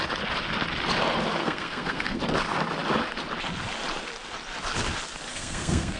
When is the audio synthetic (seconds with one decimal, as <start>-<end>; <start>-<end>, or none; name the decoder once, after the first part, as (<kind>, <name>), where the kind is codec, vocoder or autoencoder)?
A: 1.4-2.2 (codec, SNAC); 5.3-6.0